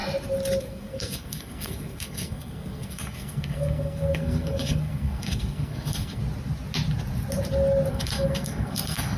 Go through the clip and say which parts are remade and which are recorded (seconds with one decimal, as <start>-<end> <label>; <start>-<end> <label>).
0.0-0.6 recorded; 0.6-6.2 remade; 6.2-7.9 recorded; 7.9-9.2 remade